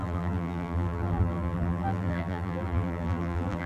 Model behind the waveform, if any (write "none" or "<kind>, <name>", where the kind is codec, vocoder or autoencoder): vocoder, BigVGAN v2